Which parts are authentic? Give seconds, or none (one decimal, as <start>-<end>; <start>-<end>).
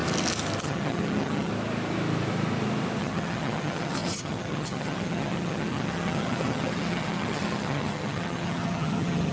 0.0-0.6; 1.5-3.0